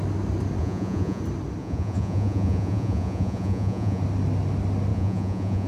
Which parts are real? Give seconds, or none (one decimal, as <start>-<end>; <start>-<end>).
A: 0.0-0.6; 1.2-1.6; 4.0-4.9